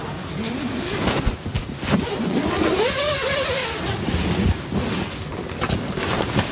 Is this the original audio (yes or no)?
yes